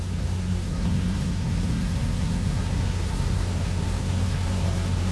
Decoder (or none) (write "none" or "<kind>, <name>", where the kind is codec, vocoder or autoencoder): codec, SNAC